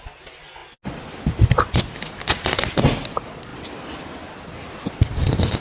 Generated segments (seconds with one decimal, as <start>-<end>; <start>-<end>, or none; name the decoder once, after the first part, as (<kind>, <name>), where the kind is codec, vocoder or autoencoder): none